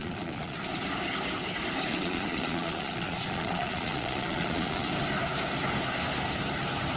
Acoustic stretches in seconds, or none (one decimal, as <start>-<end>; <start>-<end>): 0.6-1.9; 4.9-7.0